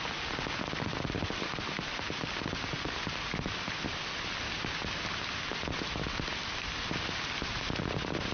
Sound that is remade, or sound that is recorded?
recorded